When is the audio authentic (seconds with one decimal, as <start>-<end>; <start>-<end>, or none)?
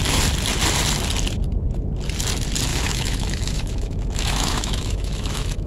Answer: 0.0-2.7